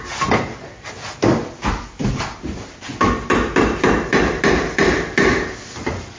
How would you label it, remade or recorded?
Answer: recorded